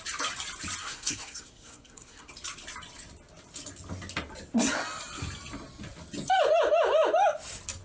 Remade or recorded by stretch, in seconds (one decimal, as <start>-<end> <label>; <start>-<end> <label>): 0.0-0.8 recorded; 0.8-2.3 remade; 2.3-7.8 recorded